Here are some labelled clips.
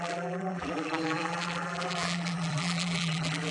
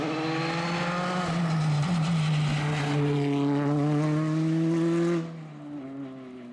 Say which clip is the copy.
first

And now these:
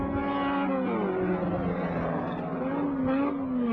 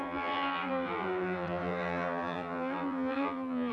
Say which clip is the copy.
second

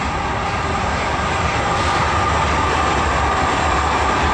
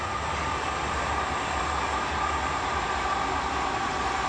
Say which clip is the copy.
first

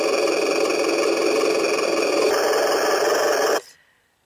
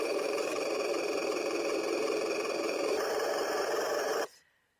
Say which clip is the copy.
second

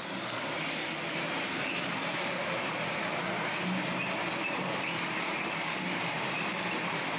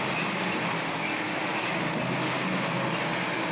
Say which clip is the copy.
first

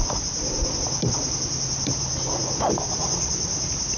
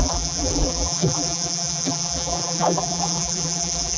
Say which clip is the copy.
second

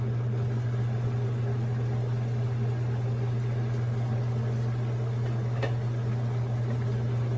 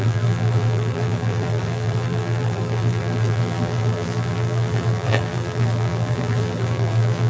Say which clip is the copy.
second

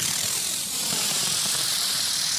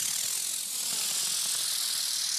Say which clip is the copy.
first